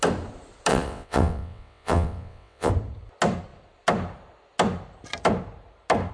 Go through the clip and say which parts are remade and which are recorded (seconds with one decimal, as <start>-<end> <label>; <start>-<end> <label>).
0.0-0.7 recorded; 0.7-2.7 remade; 2.7-6.1 recorded